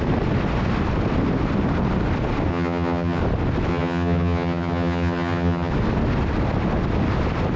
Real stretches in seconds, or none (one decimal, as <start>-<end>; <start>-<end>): 0.0-2.5; 3.2-3.7; 5.7-7.6